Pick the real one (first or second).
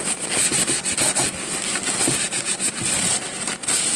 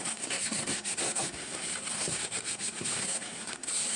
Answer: first